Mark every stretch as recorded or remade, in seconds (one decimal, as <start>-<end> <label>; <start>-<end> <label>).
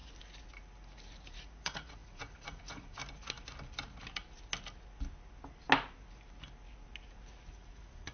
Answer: 0.0-1.3 recorded; 1.3-3.0 remade; 3.0-7.5 recorded; 7.5-8.1 remade